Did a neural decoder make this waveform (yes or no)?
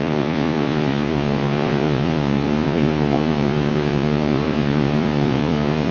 yes